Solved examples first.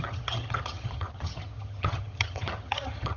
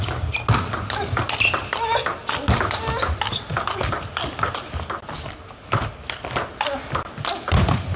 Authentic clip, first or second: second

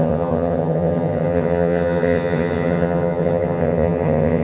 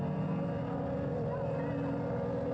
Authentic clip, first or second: second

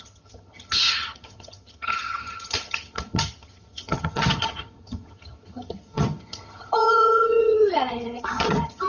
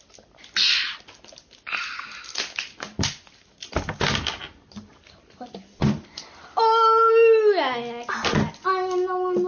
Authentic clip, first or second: second